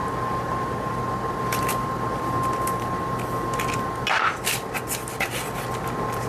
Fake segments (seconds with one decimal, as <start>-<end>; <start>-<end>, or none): 0.0-0.9